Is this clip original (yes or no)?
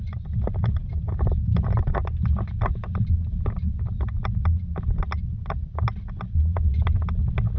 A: yes